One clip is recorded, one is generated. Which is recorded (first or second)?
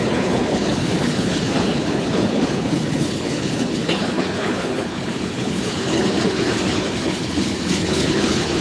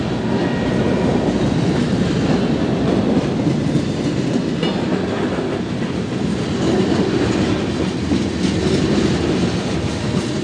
second